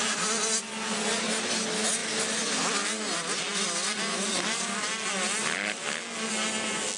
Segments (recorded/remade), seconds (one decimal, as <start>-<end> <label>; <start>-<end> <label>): 0.0-7.0 recorded